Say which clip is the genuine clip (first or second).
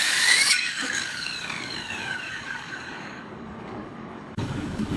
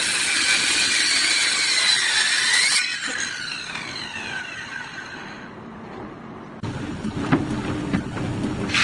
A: second